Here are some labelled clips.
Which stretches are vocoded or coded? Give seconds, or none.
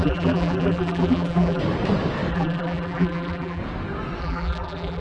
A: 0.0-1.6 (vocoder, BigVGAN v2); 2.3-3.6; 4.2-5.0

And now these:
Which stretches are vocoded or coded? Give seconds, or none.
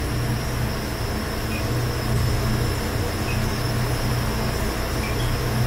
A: none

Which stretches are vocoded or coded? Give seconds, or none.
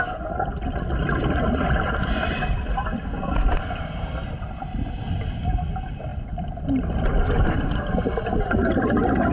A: none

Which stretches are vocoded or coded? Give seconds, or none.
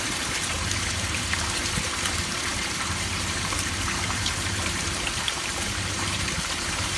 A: 0.0-7.0 (vocoder, BigVGAN v2)